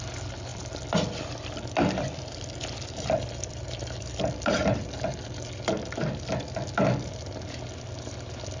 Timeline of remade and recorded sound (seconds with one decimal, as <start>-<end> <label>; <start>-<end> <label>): 0.0-0.5 recorded; 0.5-4.2 remade; 4.2-8.6 recorded